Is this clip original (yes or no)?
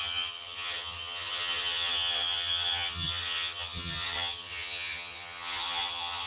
no